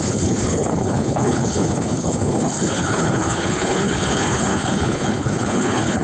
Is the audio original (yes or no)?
no